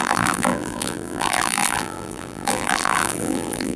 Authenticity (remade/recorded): remade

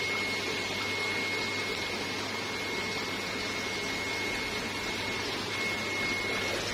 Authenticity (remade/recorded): recorded